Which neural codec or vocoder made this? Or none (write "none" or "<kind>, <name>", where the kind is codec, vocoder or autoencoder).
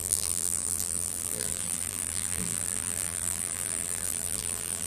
vocoder, BigVGAN v2